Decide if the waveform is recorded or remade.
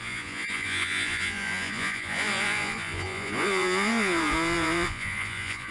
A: remade